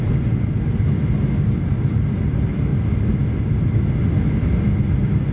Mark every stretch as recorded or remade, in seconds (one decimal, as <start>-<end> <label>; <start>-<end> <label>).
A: 0.0-5.3 recorded